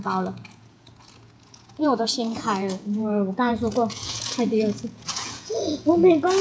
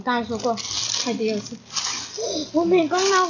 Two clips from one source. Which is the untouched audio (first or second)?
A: second